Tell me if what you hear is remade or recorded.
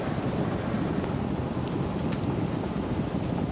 recorded